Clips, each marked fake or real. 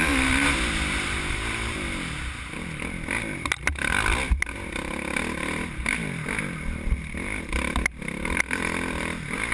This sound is real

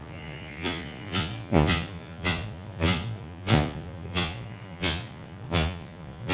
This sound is fake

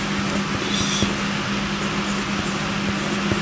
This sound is real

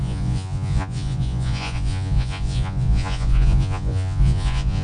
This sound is fake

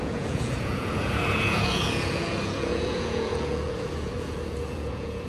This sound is fake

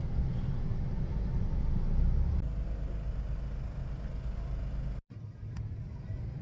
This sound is real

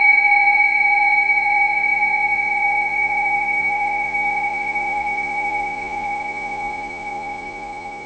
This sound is fake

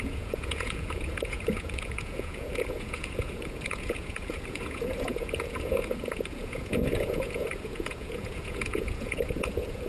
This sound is fake